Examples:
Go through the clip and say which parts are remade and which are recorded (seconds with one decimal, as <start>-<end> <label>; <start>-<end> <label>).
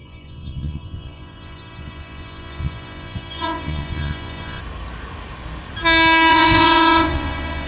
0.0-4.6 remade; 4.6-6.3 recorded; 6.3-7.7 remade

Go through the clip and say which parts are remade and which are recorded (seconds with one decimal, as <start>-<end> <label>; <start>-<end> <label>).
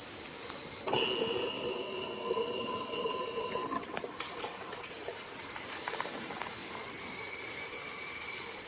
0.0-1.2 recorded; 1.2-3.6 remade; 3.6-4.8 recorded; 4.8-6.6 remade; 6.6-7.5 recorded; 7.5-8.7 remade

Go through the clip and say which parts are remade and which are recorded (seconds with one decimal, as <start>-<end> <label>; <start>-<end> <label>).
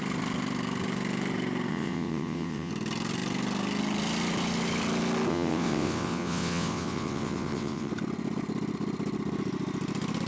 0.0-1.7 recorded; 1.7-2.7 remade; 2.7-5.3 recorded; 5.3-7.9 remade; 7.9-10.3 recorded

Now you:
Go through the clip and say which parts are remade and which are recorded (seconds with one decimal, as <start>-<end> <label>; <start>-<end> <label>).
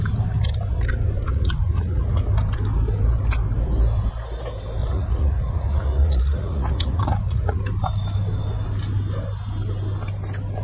0.0-1.3 recorded; 1.3-2.2 remade; 2.2-4.8 recorded; 4.8-7.6 remade; 7.6-10.6 recorded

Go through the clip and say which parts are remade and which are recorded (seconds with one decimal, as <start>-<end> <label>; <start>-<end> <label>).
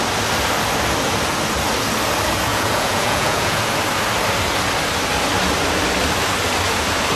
0.0-2.5 recorded; 2.5-3.6 remade; 3.6-7.2 recorded